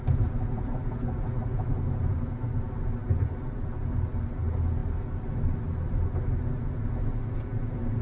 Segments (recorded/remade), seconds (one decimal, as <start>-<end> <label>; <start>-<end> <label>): 0.0-8.0 recorded